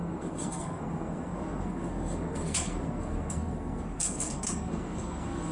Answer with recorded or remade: remade